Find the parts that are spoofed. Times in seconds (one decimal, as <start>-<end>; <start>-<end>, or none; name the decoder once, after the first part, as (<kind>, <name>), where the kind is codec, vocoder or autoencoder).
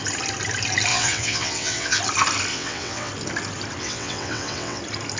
0.9-2.0 (vocoder, WaveNeXt); 2.5-3.1; 3.8-4.8